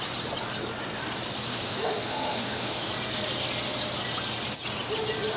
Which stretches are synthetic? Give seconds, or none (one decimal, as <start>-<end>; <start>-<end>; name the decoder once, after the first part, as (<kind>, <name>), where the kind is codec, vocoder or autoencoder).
1.5-2.9 (autoencoder, DAC-VAE)